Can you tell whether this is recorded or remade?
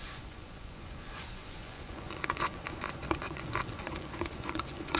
remade